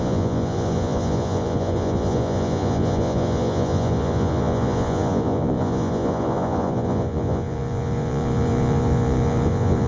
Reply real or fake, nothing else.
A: fake